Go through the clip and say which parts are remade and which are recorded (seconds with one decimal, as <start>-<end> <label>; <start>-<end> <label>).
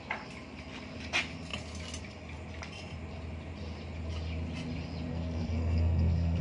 0.0-5.1 recorded; 5.1-6.4 remade